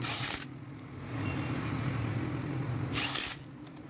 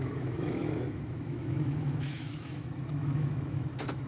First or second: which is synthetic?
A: second